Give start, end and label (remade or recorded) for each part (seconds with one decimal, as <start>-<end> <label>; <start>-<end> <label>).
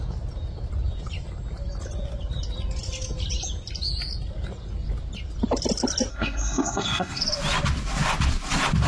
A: 0.0-6.1 recorded; 6.1-7.2 remade; 7.2-8.9 recorded